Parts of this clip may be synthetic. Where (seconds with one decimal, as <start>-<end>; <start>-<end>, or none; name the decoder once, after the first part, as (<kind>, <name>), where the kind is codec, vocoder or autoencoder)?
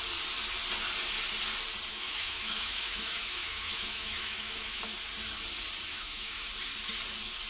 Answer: 1.9-4.8 (autoencoder, DAC-VAE); 5.9-6.5